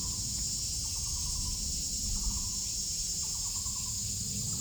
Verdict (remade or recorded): recorded